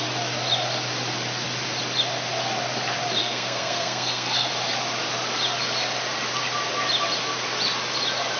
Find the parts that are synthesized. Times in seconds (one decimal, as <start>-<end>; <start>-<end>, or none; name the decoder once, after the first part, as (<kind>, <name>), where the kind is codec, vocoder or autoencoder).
3.2-4.5 (codec, SNAC)